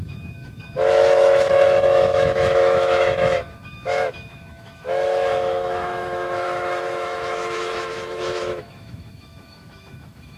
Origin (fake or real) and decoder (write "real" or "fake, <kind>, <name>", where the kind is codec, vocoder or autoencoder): fake, autoencoder, DAC-VAE